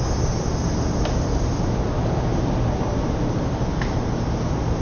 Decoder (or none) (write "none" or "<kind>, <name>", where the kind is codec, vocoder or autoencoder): none